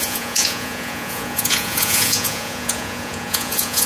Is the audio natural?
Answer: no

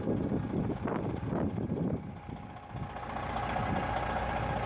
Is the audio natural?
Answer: yes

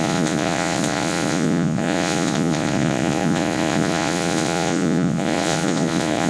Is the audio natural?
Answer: no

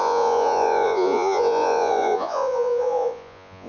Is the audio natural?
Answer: no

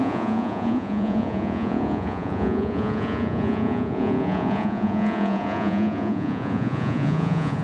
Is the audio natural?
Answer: no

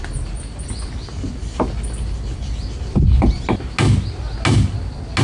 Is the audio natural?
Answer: yes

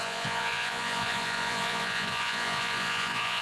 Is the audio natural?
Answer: no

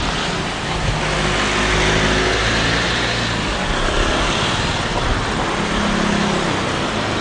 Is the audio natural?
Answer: yes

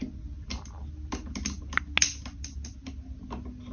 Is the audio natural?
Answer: yes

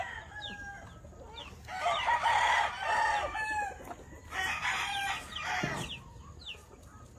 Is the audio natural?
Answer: yes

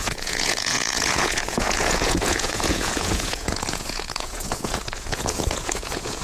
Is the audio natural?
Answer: no